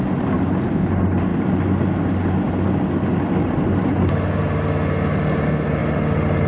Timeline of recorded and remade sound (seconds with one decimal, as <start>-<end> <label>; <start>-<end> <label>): 0.0-6.5 recorded